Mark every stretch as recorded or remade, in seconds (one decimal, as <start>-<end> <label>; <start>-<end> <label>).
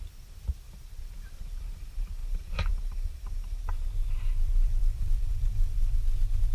0.0-0.5 recorded; 0.5-1.0 remade; 1.0-2.2 recorded; 2.2-2.7 remade; 2.7-4.6 recorded; 4.6-5.5 remade; 5.5-6.5 recorded